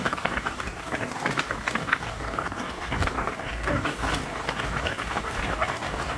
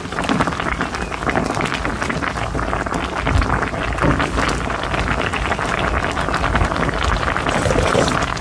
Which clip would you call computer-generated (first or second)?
first